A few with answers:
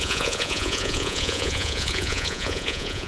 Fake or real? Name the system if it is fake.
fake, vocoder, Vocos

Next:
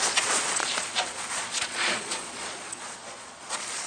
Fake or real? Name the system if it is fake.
fake, vocoder, Vocos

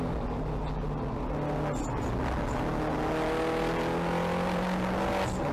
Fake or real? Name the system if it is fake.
real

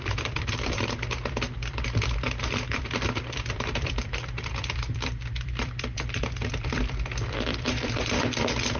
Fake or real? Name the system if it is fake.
fake, vocoder, BigVGAN v2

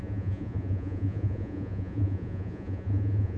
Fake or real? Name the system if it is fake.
fake, vocoder, Vocos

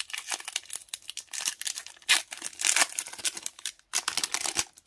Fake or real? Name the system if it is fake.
real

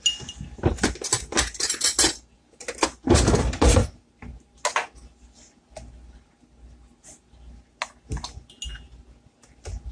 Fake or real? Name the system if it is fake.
real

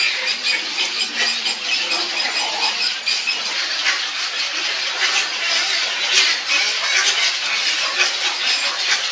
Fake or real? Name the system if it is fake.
real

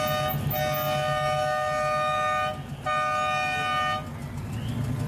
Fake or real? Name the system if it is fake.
real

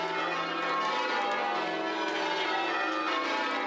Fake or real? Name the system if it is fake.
real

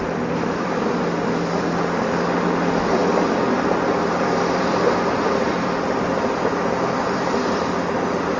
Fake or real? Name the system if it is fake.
real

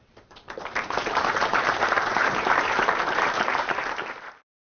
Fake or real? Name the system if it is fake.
fake, vocoder, BigVGAN v2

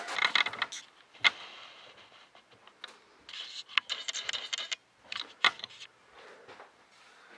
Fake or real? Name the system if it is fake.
real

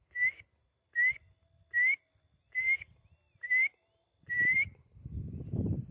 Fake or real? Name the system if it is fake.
real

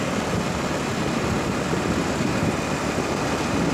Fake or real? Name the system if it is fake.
real